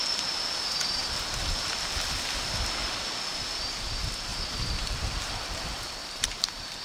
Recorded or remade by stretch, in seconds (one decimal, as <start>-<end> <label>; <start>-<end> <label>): 0.0-4.3 recorded; 4.3-5.6 remade; 5.6-6.0 recorded; 6.0-6.8 remade